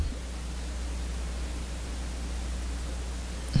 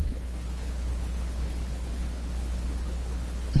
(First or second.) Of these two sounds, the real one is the first